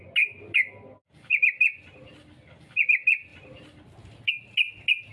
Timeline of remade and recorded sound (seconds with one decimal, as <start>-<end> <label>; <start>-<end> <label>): 0.0-5.1 recorded